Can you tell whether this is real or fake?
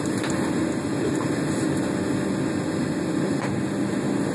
real